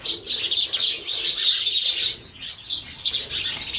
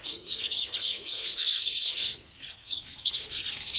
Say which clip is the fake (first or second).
second